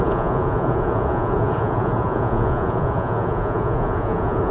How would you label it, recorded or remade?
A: remade